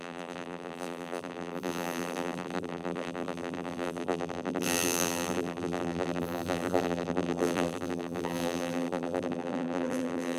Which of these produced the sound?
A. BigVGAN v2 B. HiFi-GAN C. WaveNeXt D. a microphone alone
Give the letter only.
A